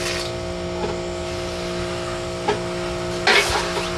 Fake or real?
real